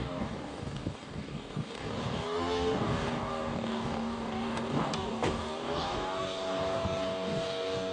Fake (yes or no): yes